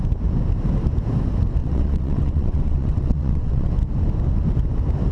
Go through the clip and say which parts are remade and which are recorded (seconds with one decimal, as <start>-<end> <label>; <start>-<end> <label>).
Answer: 0.0-1.6 recorded; 1.6-3.7 remade; 3.7-5.1 recorded